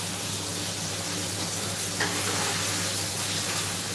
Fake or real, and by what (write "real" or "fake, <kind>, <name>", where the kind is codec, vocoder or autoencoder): real